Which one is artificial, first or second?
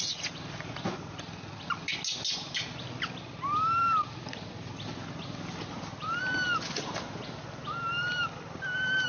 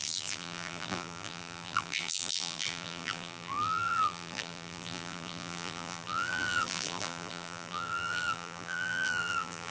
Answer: second